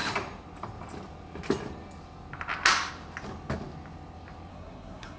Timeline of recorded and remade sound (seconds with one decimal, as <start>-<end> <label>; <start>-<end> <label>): 0.0-4.5 recorded; 4.5-5.2 remade